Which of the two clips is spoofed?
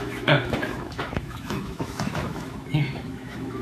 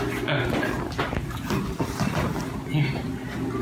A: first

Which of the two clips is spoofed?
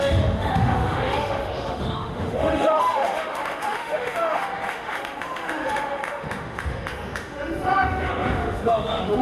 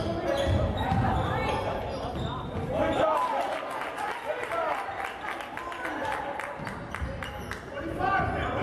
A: first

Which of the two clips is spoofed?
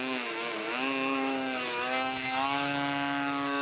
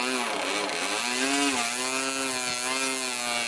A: first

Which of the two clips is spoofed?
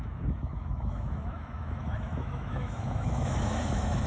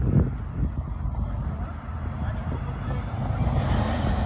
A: first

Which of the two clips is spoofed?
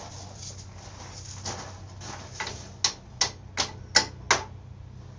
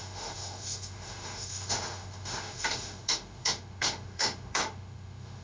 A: second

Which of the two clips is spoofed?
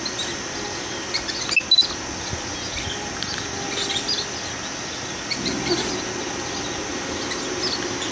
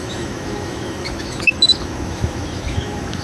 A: second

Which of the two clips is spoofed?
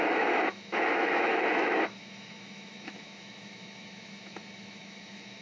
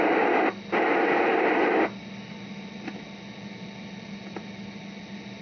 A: first